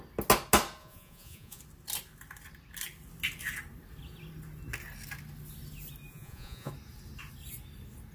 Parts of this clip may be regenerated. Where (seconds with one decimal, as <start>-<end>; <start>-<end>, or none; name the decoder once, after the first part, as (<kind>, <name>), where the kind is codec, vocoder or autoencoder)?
0.8-1.6 (vocoder, Vocos); 6.1-6.7